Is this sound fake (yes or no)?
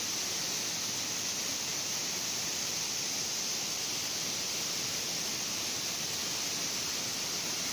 no